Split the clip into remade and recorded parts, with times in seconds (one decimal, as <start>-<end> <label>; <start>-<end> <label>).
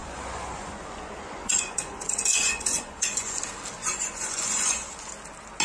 0.0-3.4 remade; 3.4-3.8 recorded; 3.8-5.1 remade; 5.1-5.6 recorded